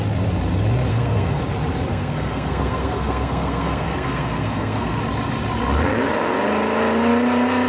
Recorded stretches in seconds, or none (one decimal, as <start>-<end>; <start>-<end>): 0.0-0.9; 1.4-1.9; 5.0-7.7